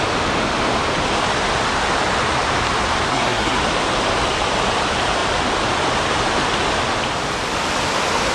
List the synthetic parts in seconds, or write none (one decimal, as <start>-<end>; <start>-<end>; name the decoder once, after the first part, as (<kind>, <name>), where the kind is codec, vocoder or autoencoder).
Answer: 3.1-3.6 (codec, SNAC)